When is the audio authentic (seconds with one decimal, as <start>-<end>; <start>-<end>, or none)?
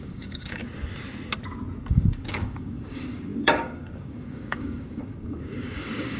0.6-1.8